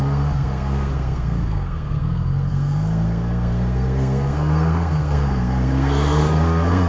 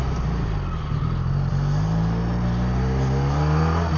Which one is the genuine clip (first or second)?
second